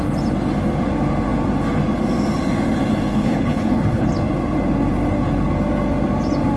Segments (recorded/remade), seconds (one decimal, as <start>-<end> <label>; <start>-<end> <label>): 0.0-3.1 recorded; 3.1-4.1 remade; 4.1-6.6 recorded